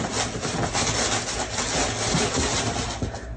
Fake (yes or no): no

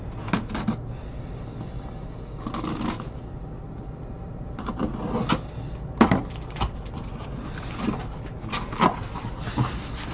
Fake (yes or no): no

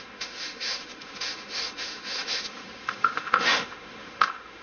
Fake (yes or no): yes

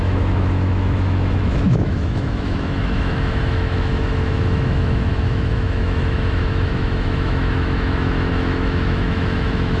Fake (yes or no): yes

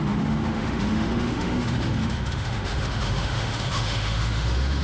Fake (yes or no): yes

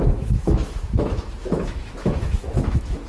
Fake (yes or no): yes